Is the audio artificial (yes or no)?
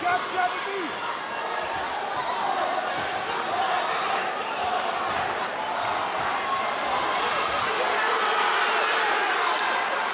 no